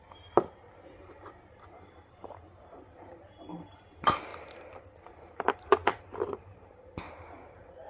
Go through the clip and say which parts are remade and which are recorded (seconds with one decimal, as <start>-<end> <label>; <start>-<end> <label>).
0.0-4.3 remade; 4.3-5.1 recorded; 5.1-7.9 remade